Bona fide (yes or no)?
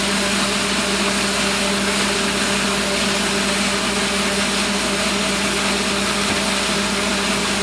yes